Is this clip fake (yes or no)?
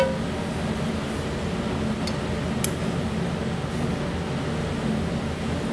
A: no